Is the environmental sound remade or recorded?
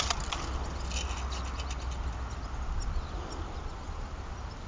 recorded